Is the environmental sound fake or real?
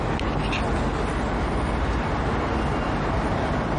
real